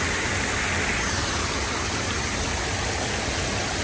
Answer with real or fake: real